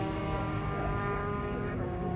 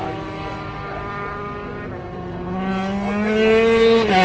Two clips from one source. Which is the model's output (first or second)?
first